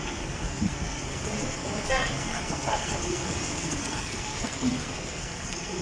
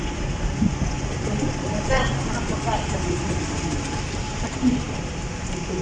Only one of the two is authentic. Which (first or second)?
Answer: second